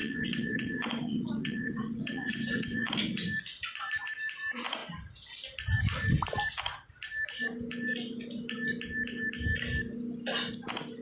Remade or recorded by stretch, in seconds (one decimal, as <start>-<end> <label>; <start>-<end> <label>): 0.0-2.9 remade; 2.9-11.0 recorded